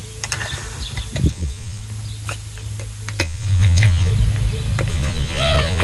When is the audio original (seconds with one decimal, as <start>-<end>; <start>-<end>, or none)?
0.0-1.3; 1.8-3.2; 4.1-4.9